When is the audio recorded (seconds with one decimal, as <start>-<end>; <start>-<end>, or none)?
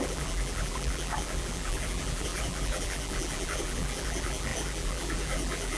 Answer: none